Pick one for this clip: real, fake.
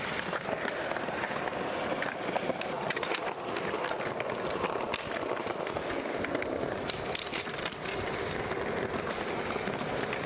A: real